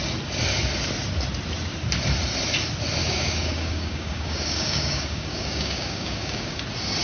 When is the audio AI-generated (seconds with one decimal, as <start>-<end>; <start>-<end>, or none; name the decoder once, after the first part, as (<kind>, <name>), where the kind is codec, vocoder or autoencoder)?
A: 3.0-6.6 (codec, DAC)